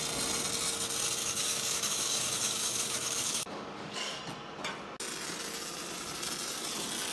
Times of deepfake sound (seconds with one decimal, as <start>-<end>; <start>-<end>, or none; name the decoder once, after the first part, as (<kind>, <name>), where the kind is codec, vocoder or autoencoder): 1.2-4.2 (codec, DAC)